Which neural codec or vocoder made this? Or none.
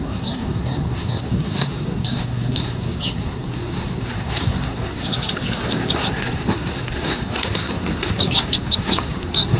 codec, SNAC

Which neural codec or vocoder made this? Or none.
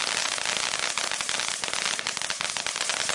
none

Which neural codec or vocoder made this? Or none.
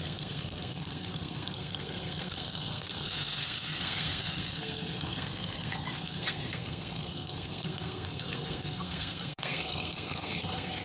codec, SNAC